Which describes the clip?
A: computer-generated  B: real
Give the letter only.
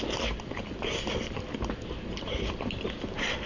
B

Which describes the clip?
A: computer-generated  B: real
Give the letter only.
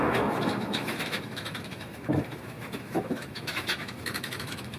A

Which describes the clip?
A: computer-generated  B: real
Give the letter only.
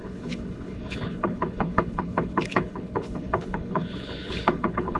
A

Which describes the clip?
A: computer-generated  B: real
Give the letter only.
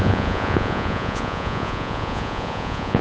A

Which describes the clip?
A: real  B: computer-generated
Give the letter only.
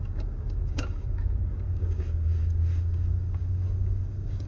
B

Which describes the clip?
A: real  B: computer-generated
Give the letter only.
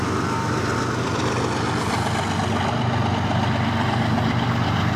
A